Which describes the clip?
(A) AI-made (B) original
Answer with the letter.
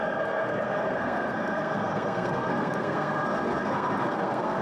A